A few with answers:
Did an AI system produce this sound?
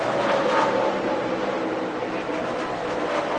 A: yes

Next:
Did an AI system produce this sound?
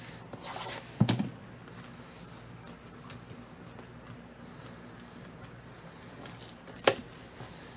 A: no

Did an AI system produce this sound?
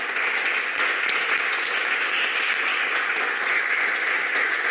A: yes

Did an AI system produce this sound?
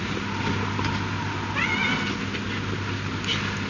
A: no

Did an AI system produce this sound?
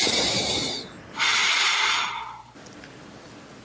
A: no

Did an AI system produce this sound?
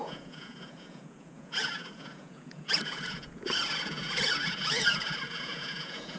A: yes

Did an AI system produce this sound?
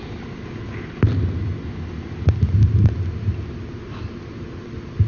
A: no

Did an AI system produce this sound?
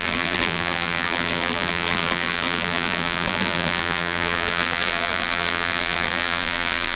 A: yes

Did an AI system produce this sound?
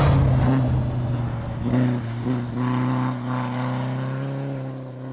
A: no